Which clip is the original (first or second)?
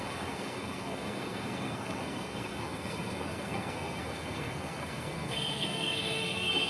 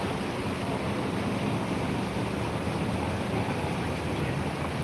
second